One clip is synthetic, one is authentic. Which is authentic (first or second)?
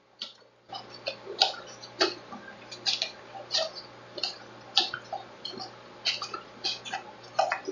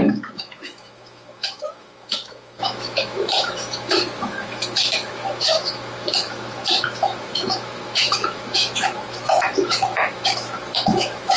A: first